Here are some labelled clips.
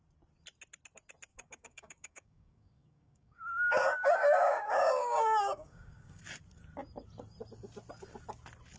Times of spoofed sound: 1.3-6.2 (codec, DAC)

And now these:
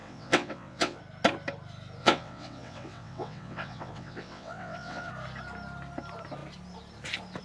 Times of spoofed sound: 0.0-1.0 (vocoder, WaveNeXt); 2.0-5.1

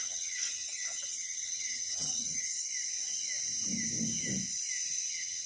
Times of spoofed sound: 0.0-2.7 (vocoder, HiFi-GAN); 5.1-5.5

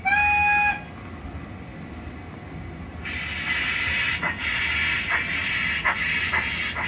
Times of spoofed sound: 4.1-4.6 (vocoder, BigVGAN v2)